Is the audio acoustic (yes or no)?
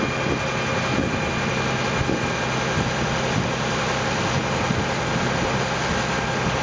yes